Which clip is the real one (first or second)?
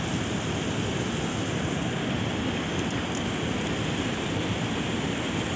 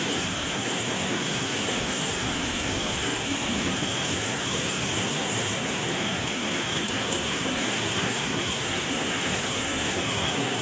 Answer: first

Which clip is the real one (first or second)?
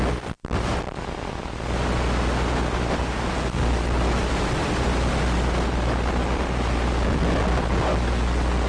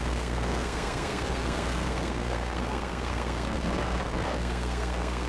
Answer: first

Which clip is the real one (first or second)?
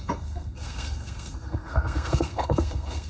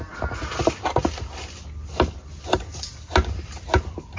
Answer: second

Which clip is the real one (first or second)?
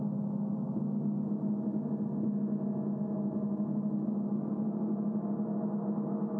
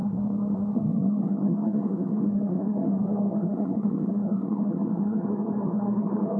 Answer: first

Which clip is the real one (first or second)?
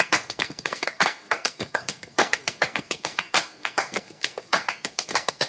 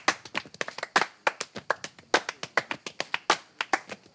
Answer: second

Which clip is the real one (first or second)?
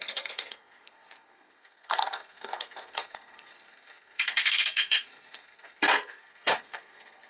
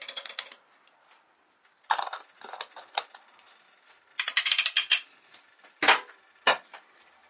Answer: second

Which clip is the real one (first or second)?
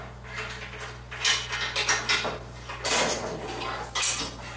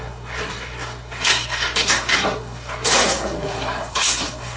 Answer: first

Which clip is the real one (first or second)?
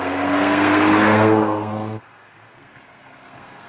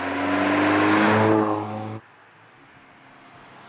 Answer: second